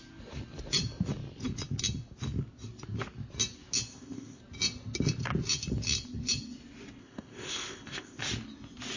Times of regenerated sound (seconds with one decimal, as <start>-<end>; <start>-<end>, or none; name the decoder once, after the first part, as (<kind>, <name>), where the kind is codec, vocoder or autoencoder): 3.9-4.4 (codec, ZipCodec); 7.0-8.2